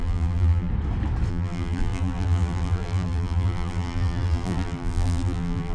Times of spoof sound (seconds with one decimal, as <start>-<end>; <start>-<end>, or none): 0.0-0.7; 1.3-5.7